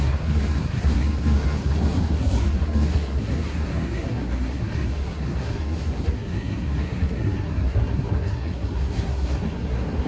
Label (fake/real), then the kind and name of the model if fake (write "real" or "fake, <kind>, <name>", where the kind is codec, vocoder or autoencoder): fake, codec, SNAC